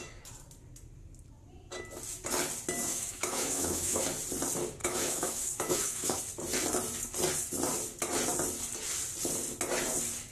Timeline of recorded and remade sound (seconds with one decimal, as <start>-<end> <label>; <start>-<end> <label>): 0.0-2.9 recorded; 2.9-4.0 remade; 4.0-4.8 recorded; 4.8-6.2 remade; 6.2-10.3 recorded